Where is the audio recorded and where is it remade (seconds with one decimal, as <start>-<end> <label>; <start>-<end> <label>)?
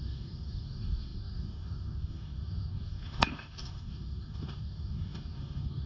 0.0-5.9 remade